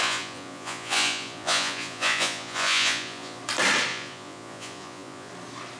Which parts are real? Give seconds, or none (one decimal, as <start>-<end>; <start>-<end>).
3.4-3.9; 5.3-5.8